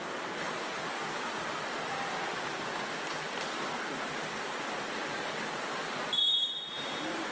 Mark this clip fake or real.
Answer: real